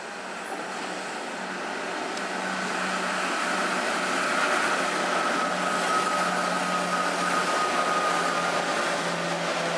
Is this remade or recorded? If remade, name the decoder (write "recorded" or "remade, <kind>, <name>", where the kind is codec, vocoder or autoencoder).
recorded